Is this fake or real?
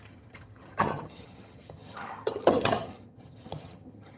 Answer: fake